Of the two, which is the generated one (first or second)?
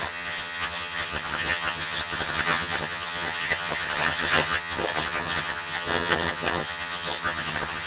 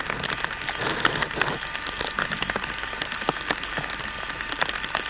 first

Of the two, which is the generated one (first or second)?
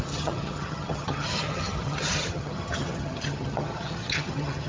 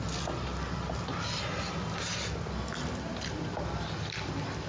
first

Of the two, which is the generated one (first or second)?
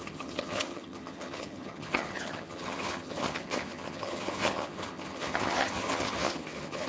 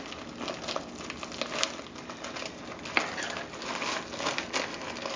first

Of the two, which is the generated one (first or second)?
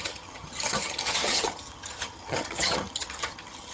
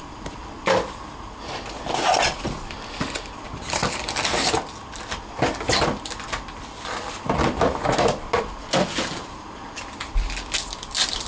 first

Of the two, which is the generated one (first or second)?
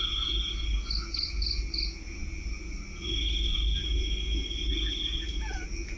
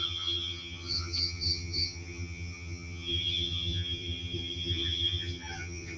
second